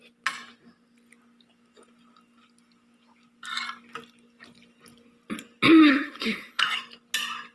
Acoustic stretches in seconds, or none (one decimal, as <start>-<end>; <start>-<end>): 0.0-5.8; 6.6-7.5